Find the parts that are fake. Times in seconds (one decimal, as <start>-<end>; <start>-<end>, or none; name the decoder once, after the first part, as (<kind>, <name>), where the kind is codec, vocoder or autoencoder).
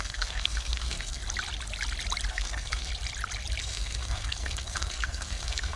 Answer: 0.0-1.2 (codec, SNAC); 2.3-2.9; 3.6-5.8